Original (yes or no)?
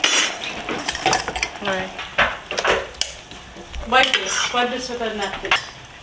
yes